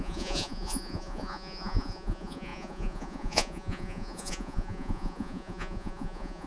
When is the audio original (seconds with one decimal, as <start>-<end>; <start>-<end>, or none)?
none